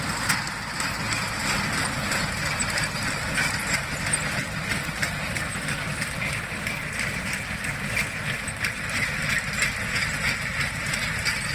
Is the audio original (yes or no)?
yes